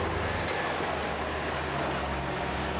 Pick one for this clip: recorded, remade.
recorded